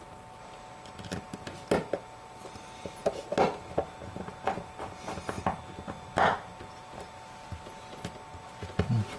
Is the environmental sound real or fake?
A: real